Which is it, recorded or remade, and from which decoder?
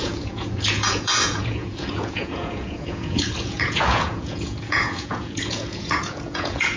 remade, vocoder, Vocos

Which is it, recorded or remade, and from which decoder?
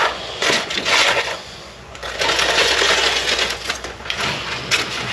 remade, vocoder, Vocos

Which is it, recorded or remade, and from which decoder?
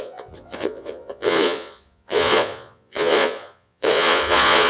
remade, vocoder, Vocos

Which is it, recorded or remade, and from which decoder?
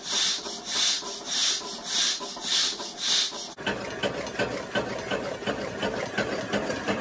recorded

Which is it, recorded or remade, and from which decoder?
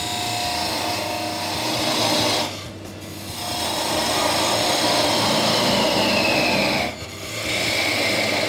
recorded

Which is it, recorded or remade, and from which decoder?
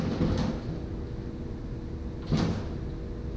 recorded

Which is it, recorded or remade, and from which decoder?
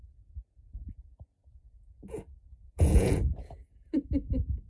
remade, vocoder, Vocos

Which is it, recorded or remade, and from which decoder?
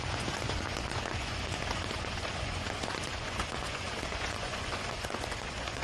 remade, vocoder, Vocos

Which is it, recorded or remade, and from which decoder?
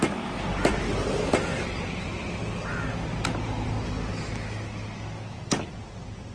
recorded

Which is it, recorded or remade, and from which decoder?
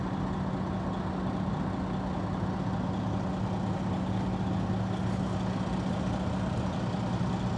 recorded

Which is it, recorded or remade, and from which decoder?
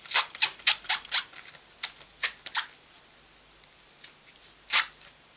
recorded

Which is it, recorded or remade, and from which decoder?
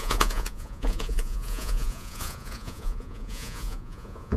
remade, vocoder, Vocos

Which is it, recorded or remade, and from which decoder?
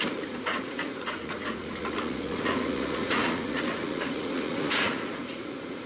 remade, vocoder, Vocos